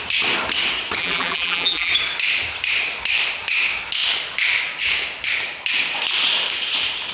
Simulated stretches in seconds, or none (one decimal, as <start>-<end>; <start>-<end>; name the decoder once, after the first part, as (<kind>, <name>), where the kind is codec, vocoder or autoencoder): 1.0-1.9 (vocoder, BigVGAN v2)